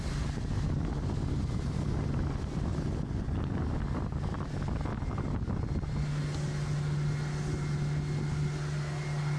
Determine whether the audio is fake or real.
real